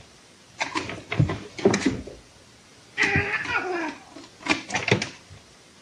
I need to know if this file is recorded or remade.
recorded